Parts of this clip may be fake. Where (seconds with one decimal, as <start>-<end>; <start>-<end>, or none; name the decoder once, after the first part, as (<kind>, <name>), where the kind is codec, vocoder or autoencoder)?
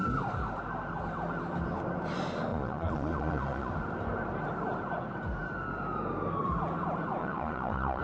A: 2.5-3.7 (vocoder, Vocos); 7.2-8.0